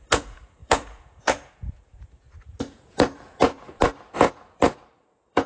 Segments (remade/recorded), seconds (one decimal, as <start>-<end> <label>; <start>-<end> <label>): 0.0-5.5 remade